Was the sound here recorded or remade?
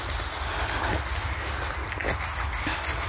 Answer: recorded